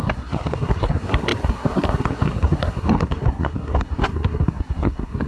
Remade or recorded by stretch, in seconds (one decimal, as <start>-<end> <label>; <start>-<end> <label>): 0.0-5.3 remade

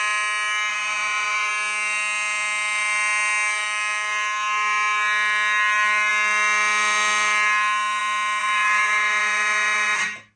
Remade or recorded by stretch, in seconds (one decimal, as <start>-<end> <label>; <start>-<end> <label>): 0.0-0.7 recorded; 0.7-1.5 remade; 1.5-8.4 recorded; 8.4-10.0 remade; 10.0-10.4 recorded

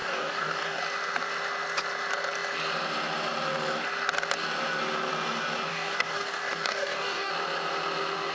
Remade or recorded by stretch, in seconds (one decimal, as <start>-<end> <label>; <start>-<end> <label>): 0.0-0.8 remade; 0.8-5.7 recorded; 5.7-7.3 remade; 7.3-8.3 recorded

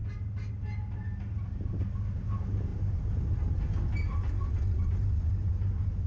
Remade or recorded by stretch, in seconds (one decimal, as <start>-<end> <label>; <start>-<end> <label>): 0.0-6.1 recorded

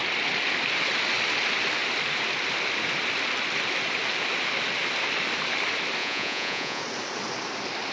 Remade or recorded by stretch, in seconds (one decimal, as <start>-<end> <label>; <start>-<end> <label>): 0.0-6.0 recorded; 6.0-6.8 remade; 6.8-7.9 recorded